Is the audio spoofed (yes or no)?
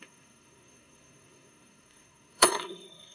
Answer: yes